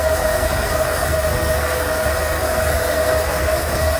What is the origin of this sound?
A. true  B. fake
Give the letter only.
B